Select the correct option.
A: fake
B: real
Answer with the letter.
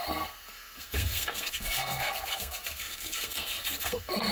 A